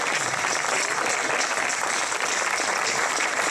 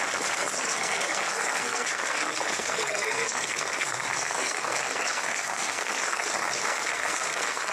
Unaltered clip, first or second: first